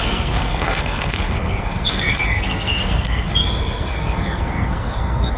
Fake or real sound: fake